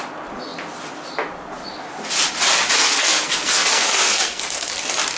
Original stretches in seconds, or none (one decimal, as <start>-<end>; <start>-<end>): 0.0-2.8; 4.7-5.2